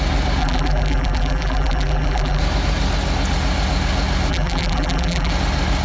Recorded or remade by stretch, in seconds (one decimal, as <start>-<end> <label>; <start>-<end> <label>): 0.0-0.4 recorded; 0.4-2.4 remade; 2.4-4.3 recorded; 4.3-5.3 remade; 5.3-5.8 recorded